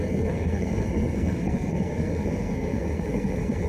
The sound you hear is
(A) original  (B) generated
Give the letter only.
B